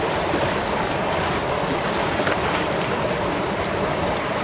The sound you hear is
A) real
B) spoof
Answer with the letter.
B